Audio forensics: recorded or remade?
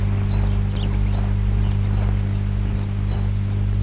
recorded